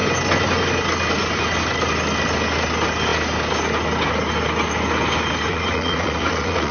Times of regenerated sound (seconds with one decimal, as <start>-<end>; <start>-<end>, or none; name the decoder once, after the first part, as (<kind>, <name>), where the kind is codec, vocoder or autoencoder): 5.5-6.7 (vocoder, Vocos)